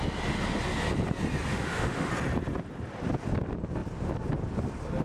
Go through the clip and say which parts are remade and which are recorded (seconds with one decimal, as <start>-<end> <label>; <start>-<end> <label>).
0.0-1.5 recorded; 1.5-2.1 remade; 2.1-5.0 recorded